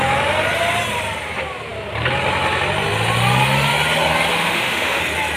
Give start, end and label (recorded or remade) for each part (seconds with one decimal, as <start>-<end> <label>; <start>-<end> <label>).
0.0-4.3 recorded; 4.3-5.0 remade; 5.0-5.4 recorded